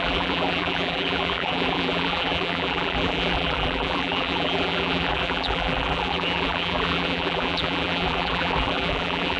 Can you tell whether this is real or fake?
fake